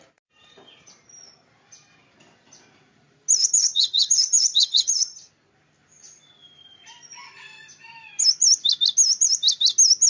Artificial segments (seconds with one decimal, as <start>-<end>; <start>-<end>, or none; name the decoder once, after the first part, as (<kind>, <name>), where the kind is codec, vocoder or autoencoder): 3.4-5.3 (vocoder, HiFi-GAN)